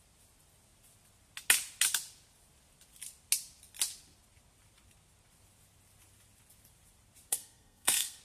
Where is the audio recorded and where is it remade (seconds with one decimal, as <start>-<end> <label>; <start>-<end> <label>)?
0.0-7.3 recorded; 7.3-8.2 remade

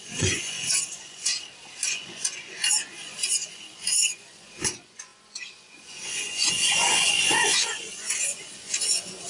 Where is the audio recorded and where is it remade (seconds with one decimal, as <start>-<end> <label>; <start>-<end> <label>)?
0.0-1.3 remade; 1.3-1.9 recorded; 1.9-9.3 remade

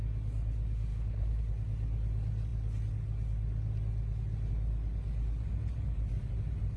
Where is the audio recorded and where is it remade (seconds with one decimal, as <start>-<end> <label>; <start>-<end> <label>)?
0.0-0.9 recorded; 0.9-1.4 remade; 1.4-6.8 recorded

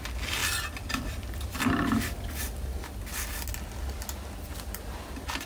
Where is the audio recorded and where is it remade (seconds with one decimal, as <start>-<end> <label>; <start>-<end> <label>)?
0.0-5.5 recorded

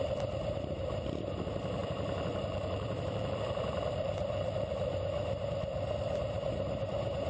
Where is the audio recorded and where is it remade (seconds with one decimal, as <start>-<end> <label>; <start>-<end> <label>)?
0.0-1.8 recorded; 1.8-4.9 remade; 4.9-7.3 recorded

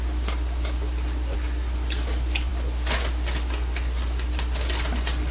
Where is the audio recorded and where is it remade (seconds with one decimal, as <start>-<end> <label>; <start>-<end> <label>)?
0.0-5.3 recorded